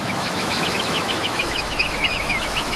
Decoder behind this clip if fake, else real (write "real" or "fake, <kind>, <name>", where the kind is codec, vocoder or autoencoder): fake, autoencoder, DAC-VAE